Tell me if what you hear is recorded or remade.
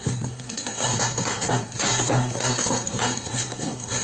remade